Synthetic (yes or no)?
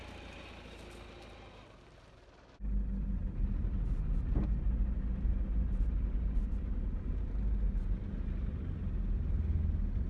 no